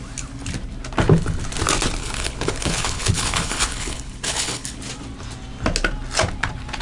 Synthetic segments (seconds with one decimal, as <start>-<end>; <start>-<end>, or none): 2.0-4.8